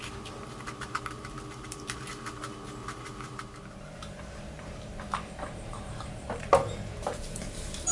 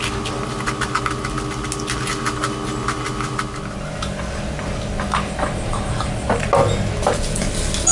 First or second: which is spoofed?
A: first